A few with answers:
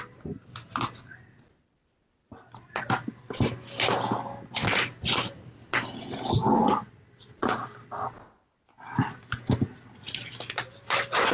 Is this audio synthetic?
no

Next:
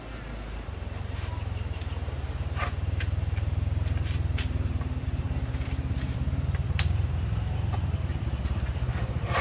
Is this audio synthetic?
no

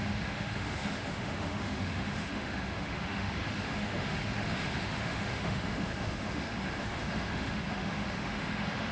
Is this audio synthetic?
yes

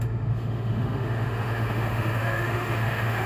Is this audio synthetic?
yes